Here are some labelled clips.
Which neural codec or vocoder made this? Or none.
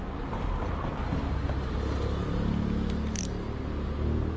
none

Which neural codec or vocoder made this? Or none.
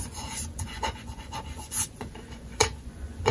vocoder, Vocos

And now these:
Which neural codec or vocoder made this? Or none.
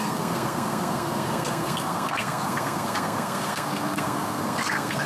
codec, SNAC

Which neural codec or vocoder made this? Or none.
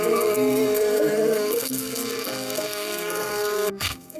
codec, SNAC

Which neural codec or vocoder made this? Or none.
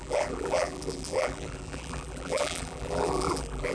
vocoder, BigVGAN v2